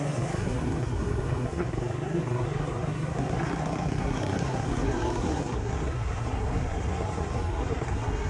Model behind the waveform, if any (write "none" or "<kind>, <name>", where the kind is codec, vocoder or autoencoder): codec, SNAC